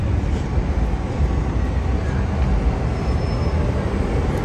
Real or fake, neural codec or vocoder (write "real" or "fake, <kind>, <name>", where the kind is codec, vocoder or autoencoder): real